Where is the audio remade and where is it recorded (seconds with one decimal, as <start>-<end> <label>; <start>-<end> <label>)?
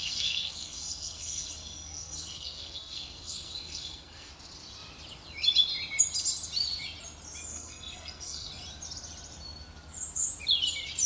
0.0-4.3 remade; 4.3-7.5 recorded; 7.5-8.5 remade; 8.5-11.1 recorded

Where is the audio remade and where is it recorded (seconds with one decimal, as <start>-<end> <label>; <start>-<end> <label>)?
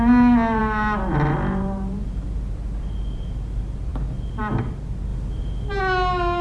0.0-6.4 recorded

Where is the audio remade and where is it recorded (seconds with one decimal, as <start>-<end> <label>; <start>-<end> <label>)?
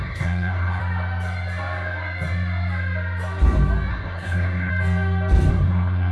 0.0-0.8 remade; 0.8-3.9 recorded; 3.9-4.7 remade; 4.7-5.5 recorded; 5.5-6.1 remade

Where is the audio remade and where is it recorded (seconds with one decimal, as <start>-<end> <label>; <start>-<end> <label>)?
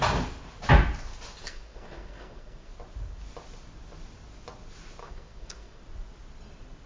0.0-1.4 recorded; 1.4-2.7 remade; 2.7-5.0 recorded; 5.0-5.8 remade; 5.8-6.9 recorded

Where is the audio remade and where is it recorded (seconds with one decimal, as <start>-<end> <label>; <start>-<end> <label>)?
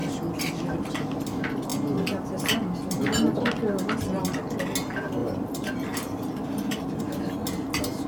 0.0-5.2 recorded; 5.2-7.0 remade; 7.0-8.1 recorded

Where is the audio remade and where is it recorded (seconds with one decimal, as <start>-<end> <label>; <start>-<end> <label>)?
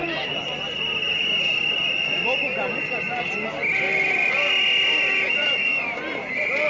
0.0-6.7 recorded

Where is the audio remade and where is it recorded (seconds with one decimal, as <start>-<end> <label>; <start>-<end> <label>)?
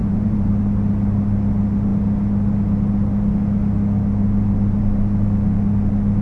0.0-0.6 remade; 0.6-6.2 recorded